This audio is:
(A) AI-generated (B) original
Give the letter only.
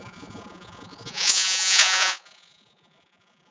A